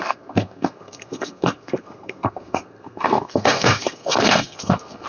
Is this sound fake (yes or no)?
yes